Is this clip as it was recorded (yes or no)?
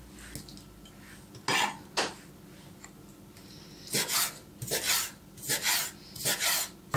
yes